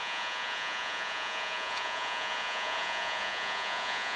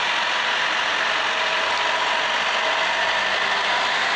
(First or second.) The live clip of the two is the second